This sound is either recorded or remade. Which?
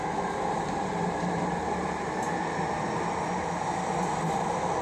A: recorded